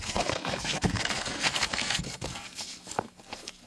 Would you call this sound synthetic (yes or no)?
yes